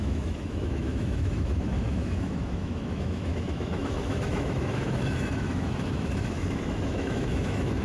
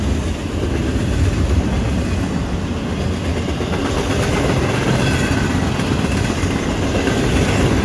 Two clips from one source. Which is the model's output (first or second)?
first